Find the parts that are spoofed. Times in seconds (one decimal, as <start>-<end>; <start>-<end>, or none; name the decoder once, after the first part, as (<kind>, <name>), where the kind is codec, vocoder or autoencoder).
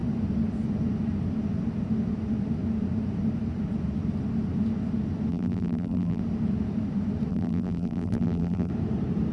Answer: 5.3-6.2 (vocoder, BigVGAN v2); 7.3-8.7